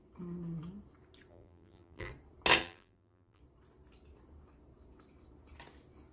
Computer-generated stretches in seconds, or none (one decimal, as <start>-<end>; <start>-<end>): 1.3-2.1; 2.6-3.4